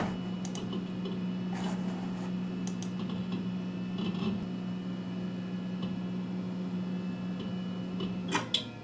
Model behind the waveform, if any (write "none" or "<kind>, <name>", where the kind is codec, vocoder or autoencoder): none